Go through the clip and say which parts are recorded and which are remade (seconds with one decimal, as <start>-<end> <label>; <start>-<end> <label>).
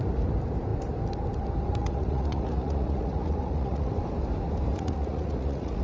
0.0-1.8 recorded; 1.8-4.0 remade; 4.0-4.7 recorded; 4.7-5.8 remade